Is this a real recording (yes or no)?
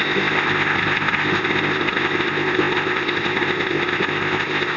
no